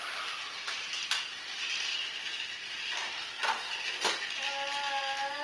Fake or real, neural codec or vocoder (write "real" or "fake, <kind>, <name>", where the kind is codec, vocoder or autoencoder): real